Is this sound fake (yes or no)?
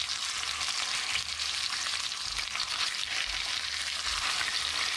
no